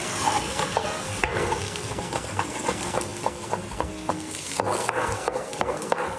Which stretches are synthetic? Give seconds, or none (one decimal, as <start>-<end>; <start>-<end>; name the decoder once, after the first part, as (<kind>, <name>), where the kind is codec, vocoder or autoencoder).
0.0-6.2 (codec, SNAC)